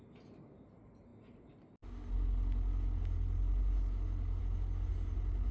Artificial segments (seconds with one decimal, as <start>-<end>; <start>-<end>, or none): none

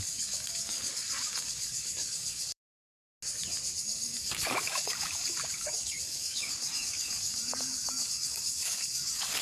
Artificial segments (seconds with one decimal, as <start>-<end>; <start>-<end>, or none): 0.0-2.9; 3.8-9.4

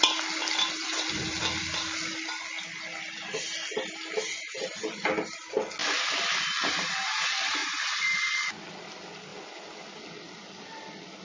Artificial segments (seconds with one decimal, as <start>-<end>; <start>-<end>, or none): 0.4-1.6; 5.8-6.7

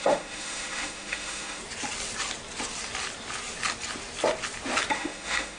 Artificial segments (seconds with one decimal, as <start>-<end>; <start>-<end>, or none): 0.0-1.6; 4.9-5.6

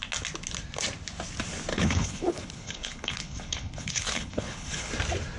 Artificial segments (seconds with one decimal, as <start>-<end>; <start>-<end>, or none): 1.7-4.9

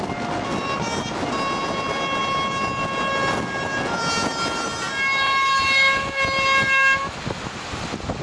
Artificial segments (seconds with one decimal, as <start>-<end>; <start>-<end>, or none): none

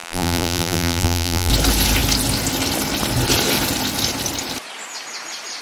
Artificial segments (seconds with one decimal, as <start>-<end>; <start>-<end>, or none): 0.0-1.5

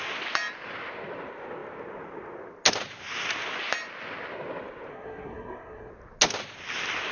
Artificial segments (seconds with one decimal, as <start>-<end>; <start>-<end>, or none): 4.9-5.9